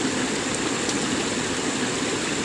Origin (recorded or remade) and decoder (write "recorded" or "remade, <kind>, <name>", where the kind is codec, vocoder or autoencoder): recorded